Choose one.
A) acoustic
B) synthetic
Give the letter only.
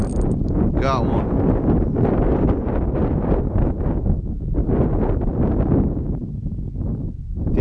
A